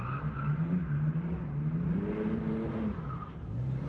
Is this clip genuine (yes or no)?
yes